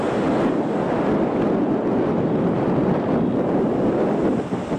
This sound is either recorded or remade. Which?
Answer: recorded